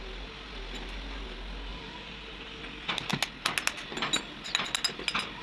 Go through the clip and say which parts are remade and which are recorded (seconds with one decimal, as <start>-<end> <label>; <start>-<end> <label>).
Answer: 0.0-1.7 recorded; 1.7-2.6 remade; 2.6-5.4 recorded